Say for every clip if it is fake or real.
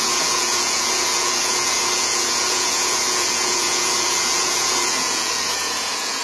fake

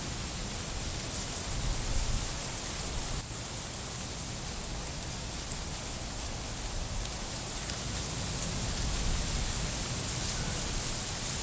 real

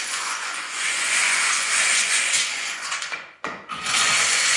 fake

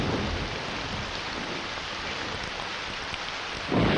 real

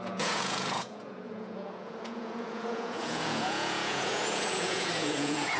fake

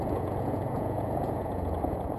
fake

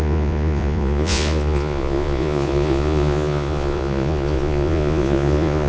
fake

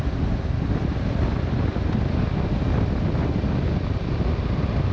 real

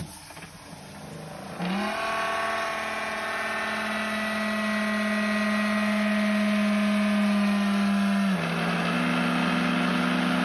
real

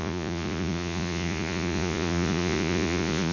fake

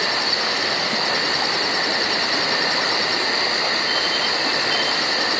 real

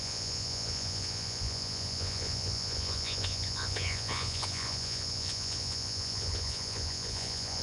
fake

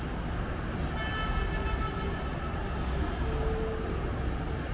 real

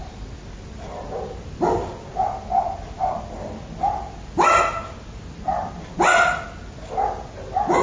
real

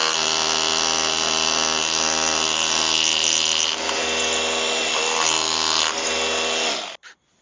real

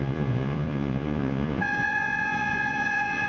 fake